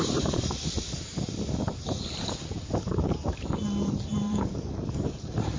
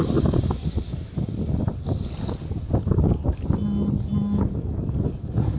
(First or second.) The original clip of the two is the second